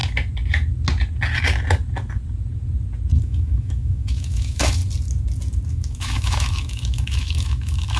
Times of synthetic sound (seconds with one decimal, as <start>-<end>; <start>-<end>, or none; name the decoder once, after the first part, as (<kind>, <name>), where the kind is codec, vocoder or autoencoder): 3.2-4.8 (autoencoder, DAC-VAE); 5.7-8.0